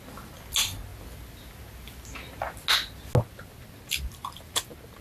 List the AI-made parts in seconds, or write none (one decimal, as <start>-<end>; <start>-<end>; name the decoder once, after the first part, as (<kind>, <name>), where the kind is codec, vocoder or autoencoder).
none